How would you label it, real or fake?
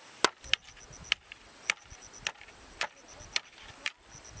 real